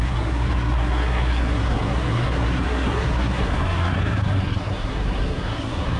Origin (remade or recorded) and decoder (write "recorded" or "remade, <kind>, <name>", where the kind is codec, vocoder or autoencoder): remade, codec, SNAC